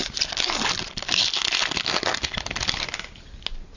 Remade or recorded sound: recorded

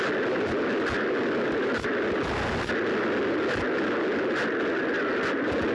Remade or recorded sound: recorded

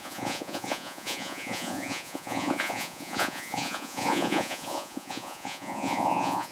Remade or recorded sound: remade